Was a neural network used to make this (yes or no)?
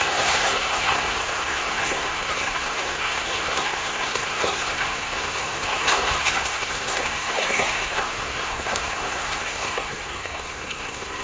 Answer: yes